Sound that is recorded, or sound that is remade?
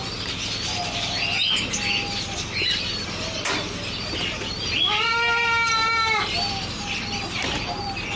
recorded